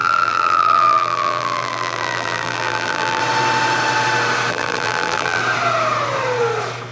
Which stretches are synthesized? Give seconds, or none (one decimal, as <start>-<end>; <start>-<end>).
0.0-3.2; 4.5-5.4